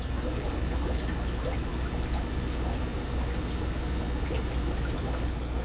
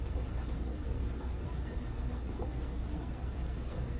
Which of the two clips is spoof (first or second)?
second